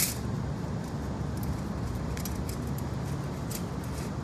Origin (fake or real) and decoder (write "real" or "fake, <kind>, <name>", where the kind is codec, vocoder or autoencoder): real